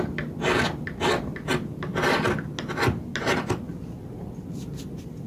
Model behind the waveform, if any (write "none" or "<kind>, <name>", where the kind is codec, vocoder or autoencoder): none